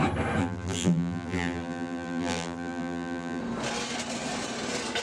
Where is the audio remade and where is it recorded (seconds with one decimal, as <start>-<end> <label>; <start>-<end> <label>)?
0.0-0.4 recorded; 0.4-3.4 remade; 3.4-5.0 recorded